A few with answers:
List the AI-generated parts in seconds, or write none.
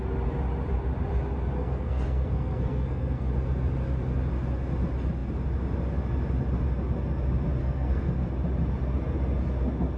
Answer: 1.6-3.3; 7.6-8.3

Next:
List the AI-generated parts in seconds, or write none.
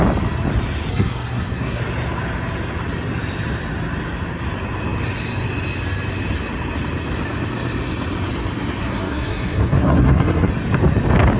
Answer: 0.9-1.8; 8.8-10.5